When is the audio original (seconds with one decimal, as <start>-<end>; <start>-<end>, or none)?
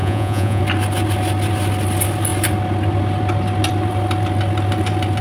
0.6-5.2